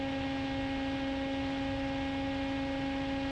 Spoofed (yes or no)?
no